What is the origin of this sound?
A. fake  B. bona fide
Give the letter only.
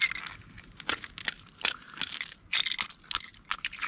B